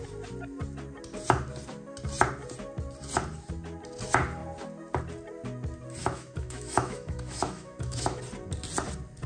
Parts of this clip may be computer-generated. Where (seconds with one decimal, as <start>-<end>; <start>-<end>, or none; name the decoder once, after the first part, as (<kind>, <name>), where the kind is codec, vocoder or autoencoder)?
6.0-8.2 (autoencoder, DAC-VAE)